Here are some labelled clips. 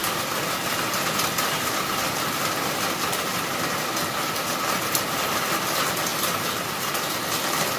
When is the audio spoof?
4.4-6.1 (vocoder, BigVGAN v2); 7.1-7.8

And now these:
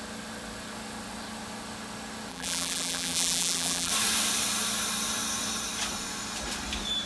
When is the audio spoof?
2.3-3.9 (vocoder, BigVGAN v2)

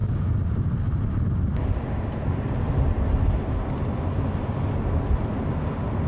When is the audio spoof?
none

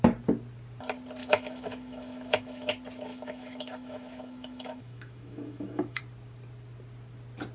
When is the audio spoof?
1.2-2.7 (autoencoder, DAC-VAE); 3.1-6.0

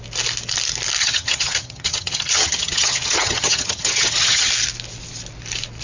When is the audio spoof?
1.0-4.5 (vocoder, HiFi-GAN)

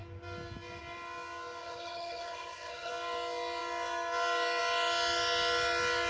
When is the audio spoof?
1.6-2.9 (codec, HILCodec)

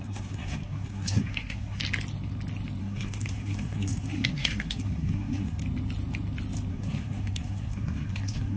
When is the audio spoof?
0.0-1.8 (codec, SNAC); 2.8-5.6; 6.7-8.6

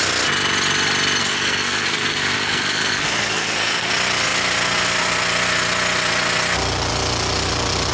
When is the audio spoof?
1.2-3.9 (codec, SNAC)